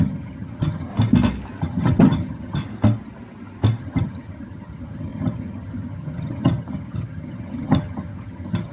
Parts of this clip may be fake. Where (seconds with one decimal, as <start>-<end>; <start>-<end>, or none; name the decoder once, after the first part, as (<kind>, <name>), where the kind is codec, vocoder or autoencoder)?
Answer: 0.0-0.9 (vocoder, HiFi-GAN); 1.6-2.6; 3.8-8.7